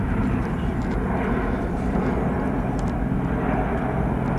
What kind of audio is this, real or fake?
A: real